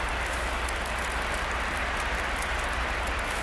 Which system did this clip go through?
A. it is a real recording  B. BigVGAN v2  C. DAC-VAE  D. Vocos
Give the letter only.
A